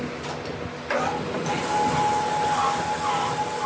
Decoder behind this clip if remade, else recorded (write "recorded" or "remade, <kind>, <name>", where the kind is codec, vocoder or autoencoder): recorded